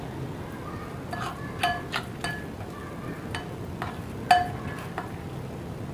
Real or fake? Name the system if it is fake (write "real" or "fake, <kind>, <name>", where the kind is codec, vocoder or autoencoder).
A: real